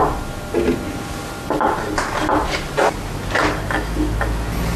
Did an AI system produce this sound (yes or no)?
no